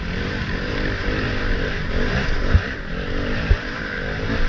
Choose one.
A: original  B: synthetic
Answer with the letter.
B